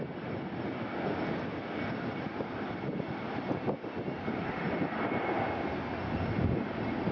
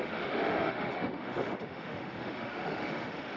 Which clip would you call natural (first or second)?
first